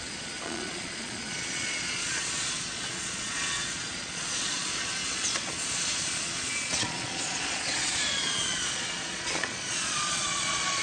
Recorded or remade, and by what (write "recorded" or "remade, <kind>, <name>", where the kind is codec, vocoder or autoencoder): remade, vocoder, Vocos